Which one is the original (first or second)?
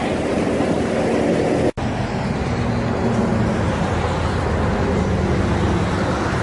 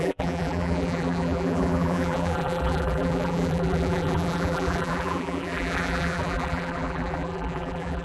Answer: first